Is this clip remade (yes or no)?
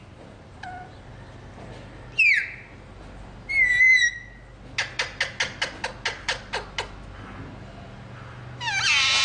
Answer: no